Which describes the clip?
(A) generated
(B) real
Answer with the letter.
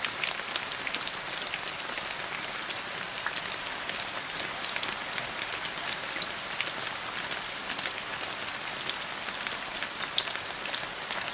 B